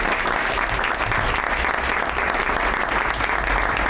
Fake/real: real